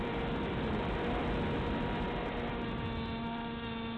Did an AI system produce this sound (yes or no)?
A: no